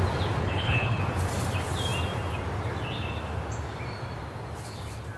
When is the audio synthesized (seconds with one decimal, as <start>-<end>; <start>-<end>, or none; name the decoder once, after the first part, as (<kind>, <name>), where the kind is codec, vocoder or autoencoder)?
0.4-1.0 (codec, HILCodec)